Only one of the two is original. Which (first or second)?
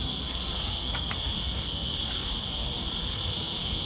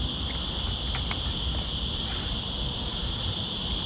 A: second